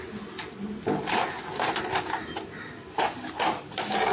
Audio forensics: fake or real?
real